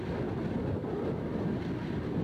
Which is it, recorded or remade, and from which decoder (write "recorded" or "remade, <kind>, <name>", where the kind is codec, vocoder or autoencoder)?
recorded